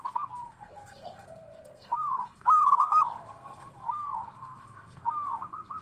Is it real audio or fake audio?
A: fake